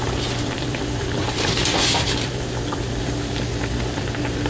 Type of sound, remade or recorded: remade